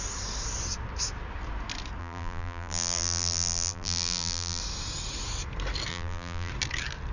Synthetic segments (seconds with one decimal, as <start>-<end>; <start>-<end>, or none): 2.0-4.6; 5.9-6.5